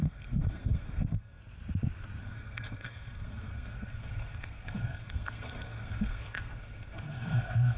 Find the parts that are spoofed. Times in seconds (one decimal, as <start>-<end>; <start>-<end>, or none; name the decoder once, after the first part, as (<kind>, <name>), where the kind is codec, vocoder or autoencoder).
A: 0.0-1.4 (codec, SNAC); 2.2-7.8